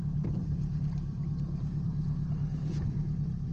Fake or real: fake